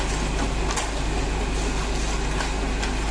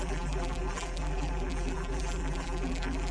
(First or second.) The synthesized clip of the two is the second